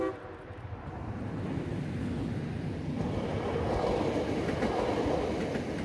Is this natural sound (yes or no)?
yes